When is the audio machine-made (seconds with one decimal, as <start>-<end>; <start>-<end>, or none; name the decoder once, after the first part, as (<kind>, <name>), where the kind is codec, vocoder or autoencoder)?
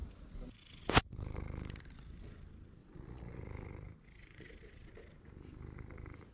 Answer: 2.8-3.4 (vocoder, Vocos); 4.2-4.9